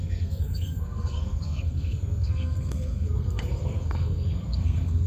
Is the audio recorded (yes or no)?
no